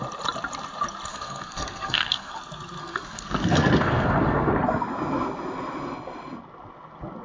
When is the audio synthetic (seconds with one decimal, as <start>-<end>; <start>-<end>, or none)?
1.1-2.4; 2.8-4.5